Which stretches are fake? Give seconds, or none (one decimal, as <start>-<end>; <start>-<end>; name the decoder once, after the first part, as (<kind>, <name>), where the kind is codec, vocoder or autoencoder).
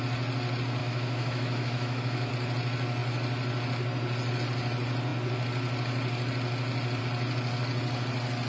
0.8-2.3 (autoencoder, DAC-VAE)